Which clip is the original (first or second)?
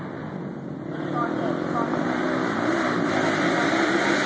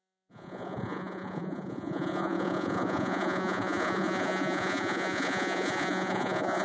first